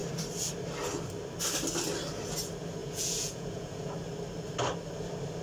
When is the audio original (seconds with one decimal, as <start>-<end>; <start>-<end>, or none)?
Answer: 0.0-2.8; 3.9-5.4